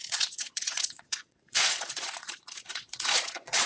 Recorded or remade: remade